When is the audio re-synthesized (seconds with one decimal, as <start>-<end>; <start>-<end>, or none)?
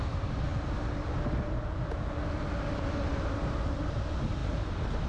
3.1-3.8